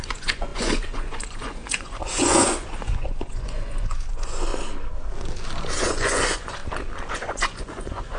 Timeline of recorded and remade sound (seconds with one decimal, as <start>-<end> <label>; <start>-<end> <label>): 0.0-4.5 remade; 4.5-5.8 recorded; 5.8-6.6 remade; 6.6-7.1 recorded; 7.1-8.2 remade